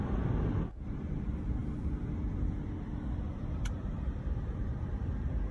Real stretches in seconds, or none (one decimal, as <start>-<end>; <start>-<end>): none